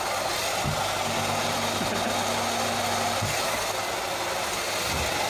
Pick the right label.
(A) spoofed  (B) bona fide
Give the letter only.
B